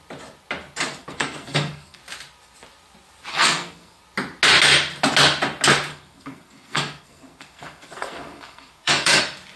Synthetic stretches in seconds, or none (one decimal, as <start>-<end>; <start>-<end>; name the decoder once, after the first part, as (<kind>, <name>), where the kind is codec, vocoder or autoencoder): 1.0-2.0 (codec, SNAC); 3.3-4.0; 5.9-9.2